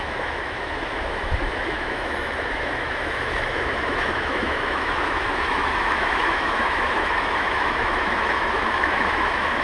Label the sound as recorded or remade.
remade